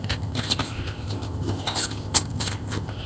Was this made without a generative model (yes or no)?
no